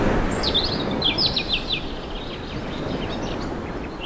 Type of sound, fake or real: real